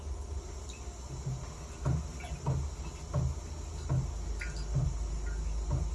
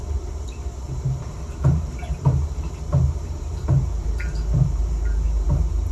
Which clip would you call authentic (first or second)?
first